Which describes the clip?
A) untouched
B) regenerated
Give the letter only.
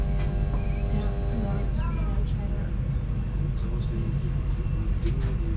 A